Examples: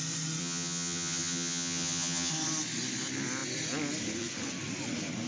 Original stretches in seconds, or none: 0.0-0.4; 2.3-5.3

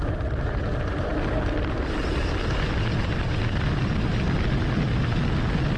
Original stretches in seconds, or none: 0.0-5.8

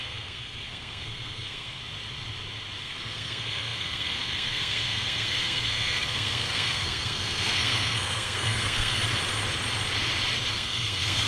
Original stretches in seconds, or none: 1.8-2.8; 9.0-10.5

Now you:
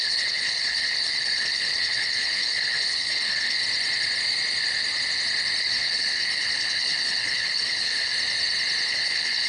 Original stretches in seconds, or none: 3.6-5.6; 8.1-8.9

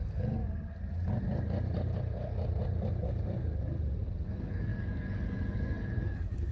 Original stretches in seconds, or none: 0.4-4.3

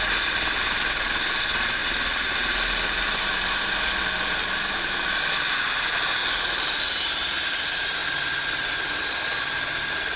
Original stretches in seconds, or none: 0.0-10.2

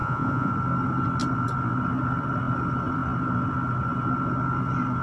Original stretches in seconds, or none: 0.5-5.0

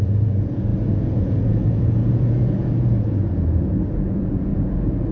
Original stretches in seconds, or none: none